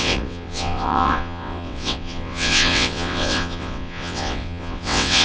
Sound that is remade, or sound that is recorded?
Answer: remade